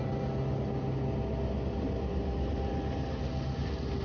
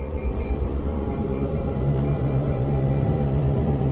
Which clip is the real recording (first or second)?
first